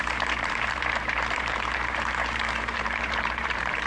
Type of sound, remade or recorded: remade